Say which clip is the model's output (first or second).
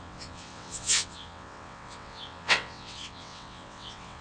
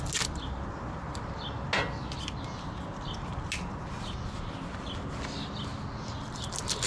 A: first